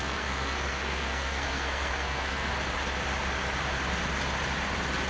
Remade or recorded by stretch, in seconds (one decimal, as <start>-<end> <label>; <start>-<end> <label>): 0.0-2.5 remade; 2.5-5.1 recorded